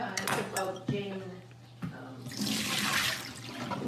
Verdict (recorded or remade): recorded